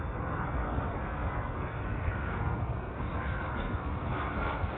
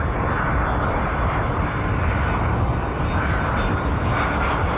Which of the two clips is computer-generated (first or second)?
first